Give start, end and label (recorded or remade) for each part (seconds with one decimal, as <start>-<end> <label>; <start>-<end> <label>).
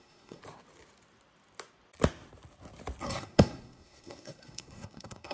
0.0-0.4 remade; 0.4-3.0 recorded; 3.0-5.3 remade